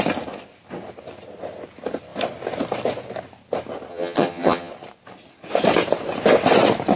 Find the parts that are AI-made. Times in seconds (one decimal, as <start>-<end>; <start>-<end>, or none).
3.9-4.7